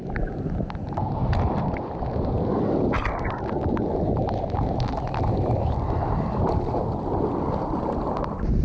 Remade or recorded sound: recorded